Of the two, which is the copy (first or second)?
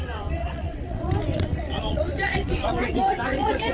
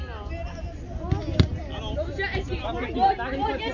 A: first